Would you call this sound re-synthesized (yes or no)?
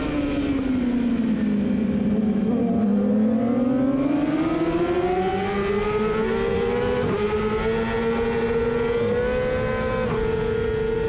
no